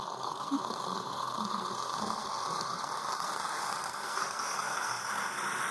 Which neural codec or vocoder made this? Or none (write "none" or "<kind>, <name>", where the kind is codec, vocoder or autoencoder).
codec, SNAC